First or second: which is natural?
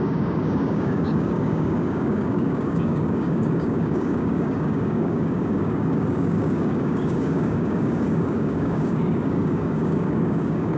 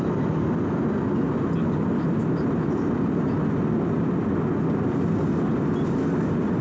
second